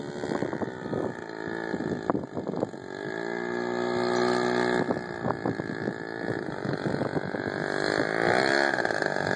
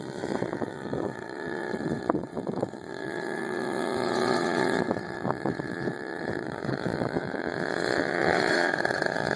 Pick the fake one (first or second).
second